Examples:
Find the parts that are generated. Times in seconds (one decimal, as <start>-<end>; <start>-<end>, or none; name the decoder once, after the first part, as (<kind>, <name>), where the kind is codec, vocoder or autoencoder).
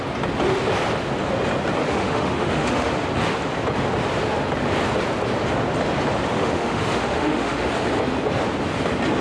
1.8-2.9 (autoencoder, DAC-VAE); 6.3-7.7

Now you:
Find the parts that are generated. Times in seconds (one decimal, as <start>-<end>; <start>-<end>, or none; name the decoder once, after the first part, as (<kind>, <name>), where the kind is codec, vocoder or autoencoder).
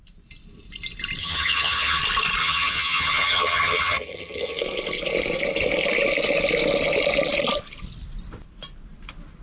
1.2-2.0 (vocoder, HiFi-GAN); 2.4-4.6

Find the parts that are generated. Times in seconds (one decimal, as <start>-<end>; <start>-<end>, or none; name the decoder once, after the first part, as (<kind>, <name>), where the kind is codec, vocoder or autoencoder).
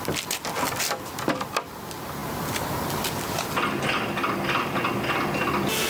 none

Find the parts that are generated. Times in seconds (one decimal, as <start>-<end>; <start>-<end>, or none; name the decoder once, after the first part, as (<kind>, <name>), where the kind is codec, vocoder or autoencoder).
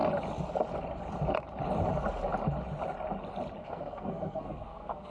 3.6-5.1 (codec, SNAC)